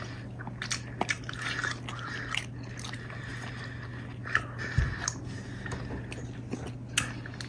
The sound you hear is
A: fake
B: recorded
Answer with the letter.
B